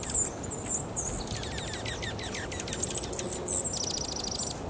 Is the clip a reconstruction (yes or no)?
no